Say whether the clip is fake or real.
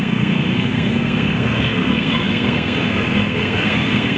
fake